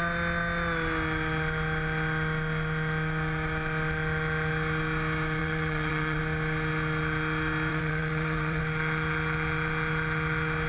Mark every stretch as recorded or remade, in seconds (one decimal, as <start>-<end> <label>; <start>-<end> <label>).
0.0-5.4 recorded; 5.4-6.2 remade; 6.2-7.7 recorded; 7.7-8.6 remade; 8.6-10.7 recorded